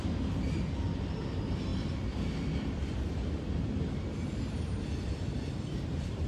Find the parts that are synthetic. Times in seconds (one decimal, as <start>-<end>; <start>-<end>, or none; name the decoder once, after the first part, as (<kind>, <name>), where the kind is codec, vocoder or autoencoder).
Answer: none